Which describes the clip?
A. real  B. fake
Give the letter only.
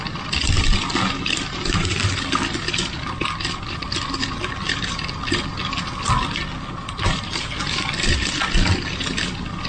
A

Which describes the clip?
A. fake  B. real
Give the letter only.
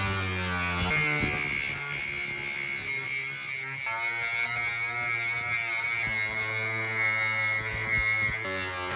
B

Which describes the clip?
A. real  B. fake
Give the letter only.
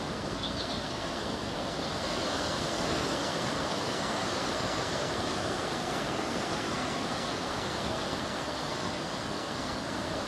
B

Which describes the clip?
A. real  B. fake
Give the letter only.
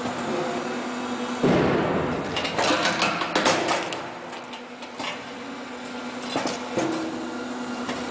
A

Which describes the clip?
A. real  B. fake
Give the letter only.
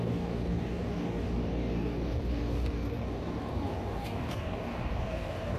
B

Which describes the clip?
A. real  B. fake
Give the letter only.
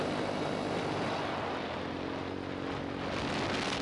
A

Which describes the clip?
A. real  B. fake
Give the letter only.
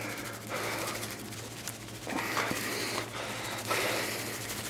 A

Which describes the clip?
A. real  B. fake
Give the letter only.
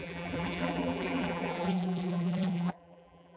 B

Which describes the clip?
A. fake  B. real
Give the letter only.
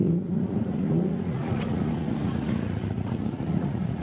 A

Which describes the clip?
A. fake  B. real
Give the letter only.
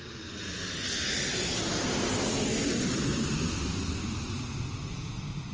B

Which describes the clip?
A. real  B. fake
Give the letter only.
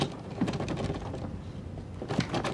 A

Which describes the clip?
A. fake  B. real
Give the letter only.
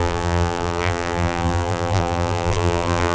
A